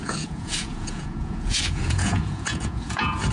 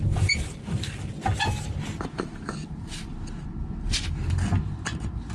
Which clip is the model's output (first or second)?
first